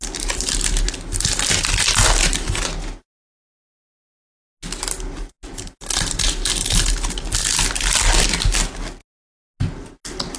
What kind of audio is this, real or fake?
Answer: real